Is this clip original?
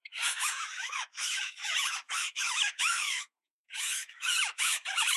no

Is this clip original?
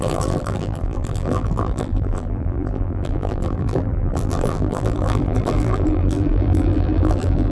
no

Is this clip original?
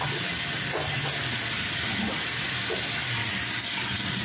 yes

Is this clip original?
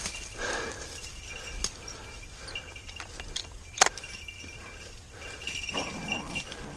yes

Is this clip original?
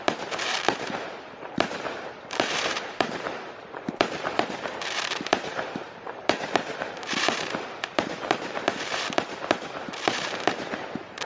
no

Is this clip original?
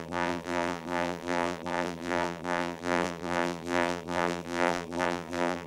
no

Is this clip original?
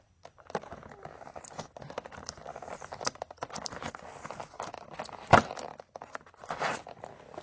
yes